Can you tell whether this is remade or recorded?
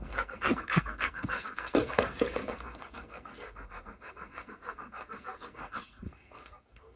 remade